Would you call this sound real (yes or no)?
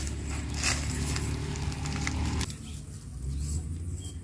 yes